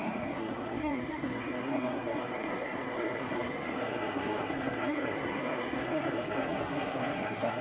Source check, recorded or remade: remade